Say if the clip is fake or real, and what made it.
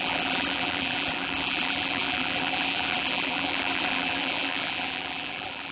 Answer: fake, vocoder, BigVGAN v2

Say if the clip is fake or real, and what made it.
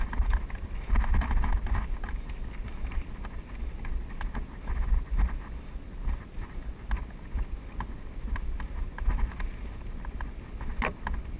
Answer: real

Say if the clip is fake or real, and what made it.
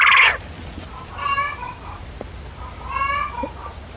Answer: real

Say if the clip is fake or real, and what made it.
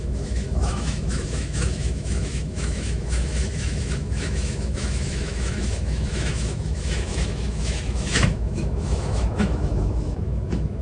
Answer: fake, autoencoder, DAC-VAE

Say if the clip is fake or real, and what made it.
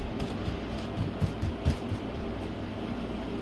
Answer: real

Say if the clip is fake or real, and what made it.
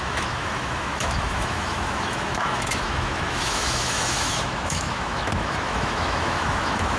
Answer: fake, autoencoder, DAC-VAE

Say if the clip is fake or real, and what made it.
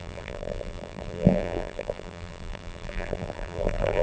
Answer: fake, vocoder, BigVGAN v2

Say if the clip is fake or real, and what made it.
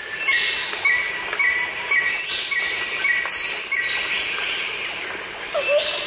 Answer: real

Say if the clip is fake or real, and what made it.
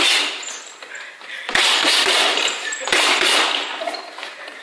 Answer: real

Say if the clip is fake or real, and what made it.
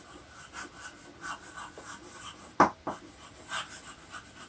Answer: real